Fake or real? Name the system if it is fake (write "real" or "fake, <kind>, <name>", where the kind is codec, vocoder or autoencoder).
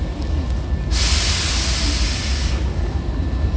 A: real